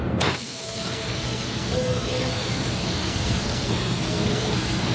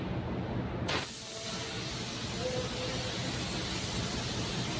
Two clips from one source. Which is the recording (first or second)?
second